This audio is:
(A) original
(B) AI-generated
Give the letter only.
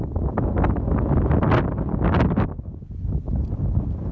A